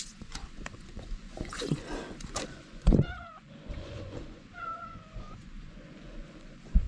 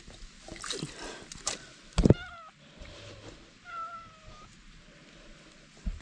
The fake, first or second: first